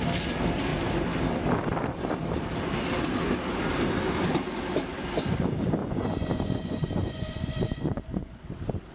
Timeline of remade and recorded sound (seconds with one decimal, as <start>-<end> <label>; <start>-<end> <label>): 0.0-5.8 recorded; 5.8-8.4 remade; 8.4-8.9 recorded